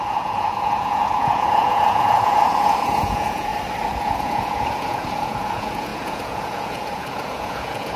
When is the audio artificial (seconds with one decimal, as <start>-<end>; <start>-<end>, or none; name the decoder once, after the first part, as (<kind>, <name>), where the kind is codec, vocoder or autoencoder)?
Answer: 0.0-3.5 (vocoder, Vocos); 4.0-8.0